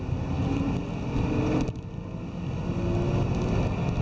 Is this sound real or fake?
real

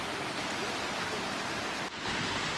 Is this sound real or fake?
real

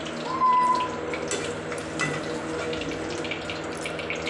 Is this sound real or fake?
real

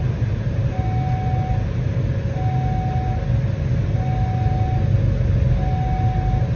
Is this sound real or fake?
real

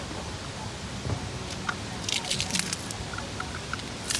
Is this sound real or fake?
real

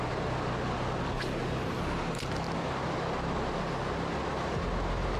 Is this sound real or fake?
real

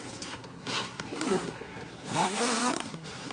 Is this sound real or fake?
fake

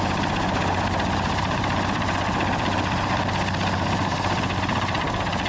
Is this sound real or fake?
real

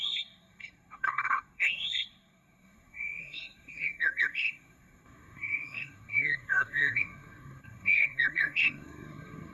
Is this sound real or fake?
fake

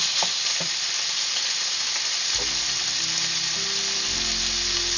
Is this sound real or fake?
real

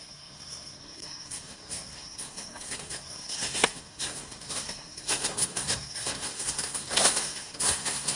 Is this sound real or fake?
fake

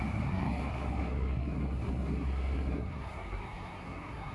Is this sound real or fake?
fake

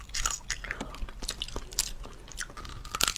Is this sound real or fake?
real